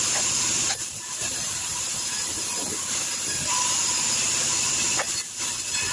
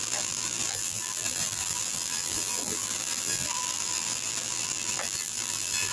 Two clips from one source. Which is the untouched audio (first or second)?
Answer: first